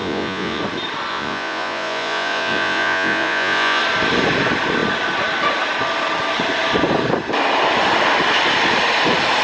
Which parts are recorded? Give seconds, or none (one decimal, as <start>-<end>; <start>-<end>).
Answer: 0.6-1.1; 3.8-9.4